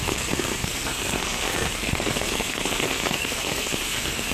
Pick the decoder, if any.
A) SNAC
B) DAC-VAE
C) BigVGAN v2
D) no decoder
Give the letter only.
A